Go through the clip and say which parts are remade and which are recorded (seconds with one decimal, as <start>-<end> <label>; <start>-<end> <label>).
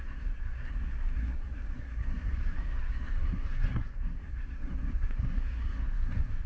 0.0-6.5 remade